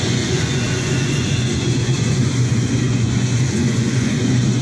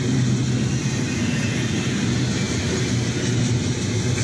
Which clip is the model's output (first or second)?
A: first